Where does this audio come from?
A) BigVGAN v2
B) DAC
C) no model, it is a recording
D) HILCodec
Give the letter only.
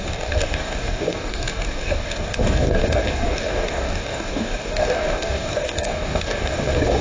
B